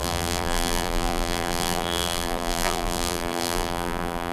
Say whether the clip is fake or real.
fake